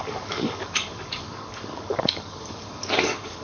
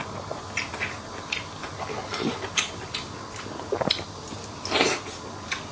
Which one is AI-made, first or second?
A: first